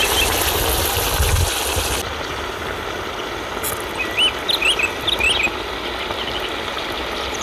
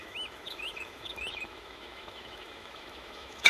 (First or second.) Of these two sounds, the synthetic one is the second